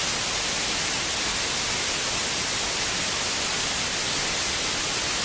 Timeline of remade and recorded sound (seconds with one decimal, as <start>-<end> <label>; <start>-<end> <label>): 0.0-5.2 recorded

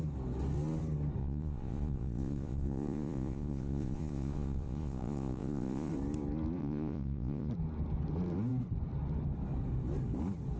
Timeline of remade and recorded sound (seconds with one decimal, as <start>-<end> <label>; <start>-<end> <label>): 0.0-1.2 recorded; 1.2-5.9 remade; 5.9-6.6 recorded; 6.6-7.5 remade; 7.5-10.6 recorded

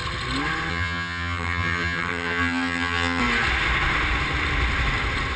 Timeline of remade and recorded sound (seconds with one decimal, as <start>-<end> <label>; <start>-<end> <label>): 0.0-0.7 recorded; 0.7-3.2 remade; 3.2-5.4 recorded